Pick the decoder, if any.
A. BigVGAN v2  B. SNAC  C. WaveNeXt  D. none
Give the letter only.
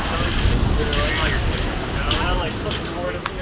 D